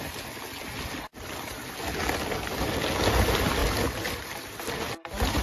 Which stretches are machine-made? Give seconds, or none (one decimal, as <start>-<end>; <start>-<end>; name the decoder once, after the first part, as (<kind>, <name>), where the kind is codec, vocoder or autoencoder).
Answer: none